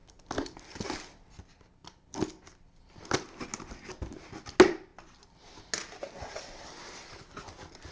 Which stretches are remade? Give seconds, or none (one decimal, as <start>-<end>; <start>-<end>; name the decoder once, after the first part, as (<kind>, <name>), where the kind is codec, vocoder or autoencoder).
0.0-0.9 (vocoder, BigVGAN v2); 1.8-2.9